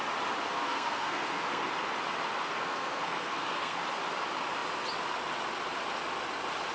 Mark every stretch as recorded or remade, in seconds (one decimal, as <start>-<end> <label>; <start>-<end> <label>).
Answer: 0.0-0.5 recorded; 0.5-1.6 remade; 1.6-2.5 recorded; 2.5-3.8 remade; 3.8-6.7 recorded